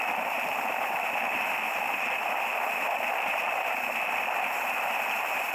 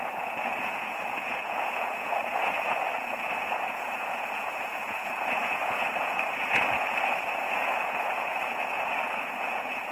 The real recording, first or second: first